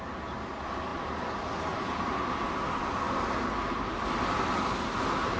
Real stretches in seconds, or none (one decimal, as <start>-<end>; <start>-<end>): 0.0-5.4